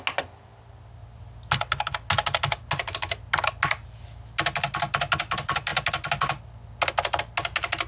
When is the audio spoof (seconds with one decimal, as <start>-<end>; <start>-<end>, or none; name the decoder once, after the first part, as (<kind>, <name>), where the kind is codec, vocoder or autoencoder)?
none